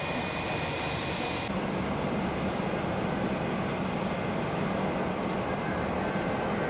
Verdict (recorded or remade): recorded